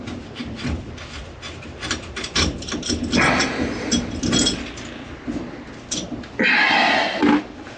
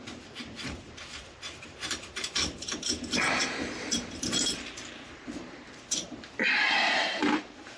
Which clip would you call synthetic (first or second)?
second